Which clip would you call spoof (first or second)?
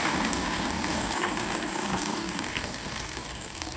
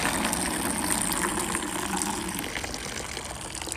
first